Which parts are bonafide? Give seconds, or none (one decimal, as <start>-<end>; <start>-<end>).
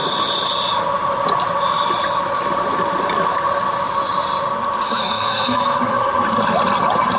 0.0-5.0; 5.8-7.2